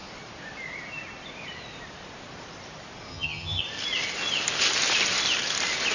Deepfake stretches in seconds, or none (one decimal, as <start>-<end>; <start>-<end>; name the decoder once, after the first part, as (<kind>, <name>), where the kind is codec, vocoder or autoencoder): 3.1-3.6 (vocoder, HiFi-GAN)